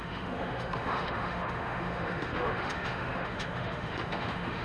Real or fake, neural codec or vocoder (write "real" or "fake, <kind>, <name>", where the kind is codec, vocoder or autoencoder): fake, autoencoder, DAC-VAE